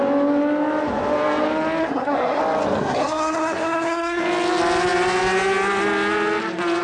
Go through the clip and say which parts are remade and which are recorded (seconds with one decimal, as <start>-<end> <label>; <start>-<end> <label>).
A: 0.0-1.8 recorded; 1.8-2.4 remade; 2.4-2.8 recorded; 2.8-4.2 remade; 4.2-6.8 recorded

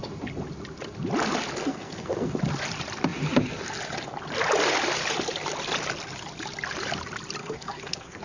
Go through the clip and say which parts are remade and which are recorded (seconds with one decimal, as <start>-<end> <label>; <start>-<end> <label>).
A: 0.0-1.6 recorded; 1.6-2.4 remade; 2.4-7.4 recorded; 7.4-8.2 remade

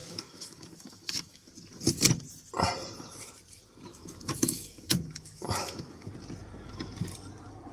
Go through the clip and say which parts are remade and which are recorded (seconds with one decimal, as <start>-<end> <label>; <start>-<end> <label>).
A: 0.0-1.5 remade; 1.5-3.9 recorded; 3.9-6.1 remade; 6.1-7.7 recorded

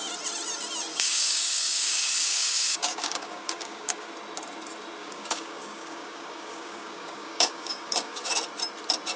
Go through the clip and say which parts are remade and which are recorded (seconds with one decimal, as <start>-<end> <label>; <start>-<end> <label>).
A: 0.0-0.9 recorded; 0.9-4.1 remade; 4.1-5.0 recorded; 5.0-8.3 remade; 8.3-9.2 recorded

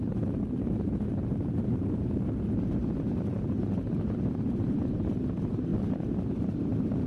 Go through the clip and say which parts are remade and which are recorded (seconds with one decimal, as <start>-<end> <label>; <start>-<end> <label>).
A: 0.0-5.7 remade; 5.7-7.1 recorded

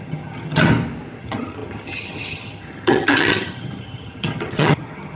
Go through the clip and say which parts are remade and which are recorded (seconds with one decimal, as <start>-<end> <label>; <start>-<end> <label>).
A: 0.0-0.7 remade; 0.7-1.2 recorded; 1.2-5.2 remade

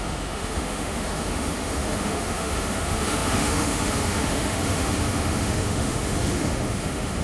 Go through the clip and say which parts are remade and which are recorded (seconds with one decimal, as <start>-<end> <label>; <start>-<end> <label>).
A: 0.0-7.2 remade

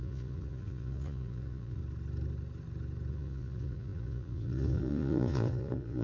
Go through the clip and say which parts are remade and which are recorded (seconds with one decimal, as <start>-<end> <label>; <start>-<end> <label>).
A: 0.0-1.8 remade; 1.8-3.1 recorded; 3.1-6.0 remade